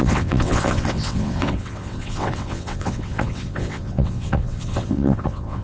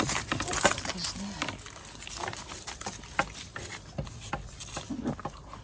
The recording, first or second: second